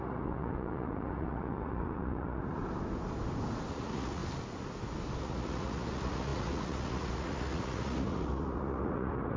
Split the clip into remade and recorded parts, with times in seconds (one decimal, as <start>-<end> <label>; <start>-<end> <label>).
0.0-2.6 remade; 2.6-3.7 recorded; 3.7-4.2 remade; 4.2-5.2 recorded; 5.2-9.4 remade